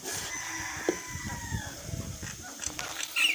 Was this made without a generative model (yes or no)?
yes